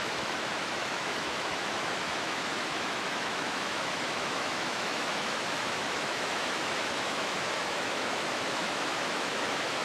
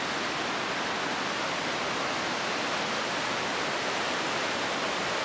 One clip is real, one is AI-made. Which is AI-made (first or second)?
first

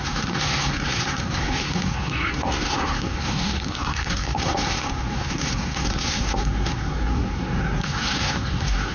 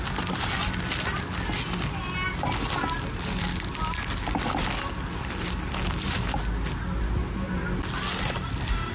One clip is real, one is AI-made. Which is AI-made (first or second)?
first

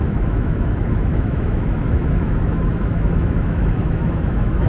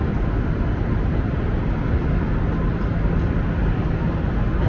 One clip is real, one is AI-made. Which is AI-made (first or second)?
first